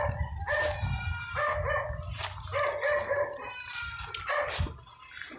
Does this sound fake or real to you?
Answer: real